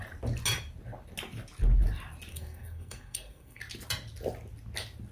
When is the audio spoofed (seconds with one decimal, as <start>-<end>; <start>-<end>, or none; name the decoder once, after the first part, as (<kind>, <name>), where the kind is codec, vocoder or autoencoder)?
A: 2.3-3.6 (codec, SNAC)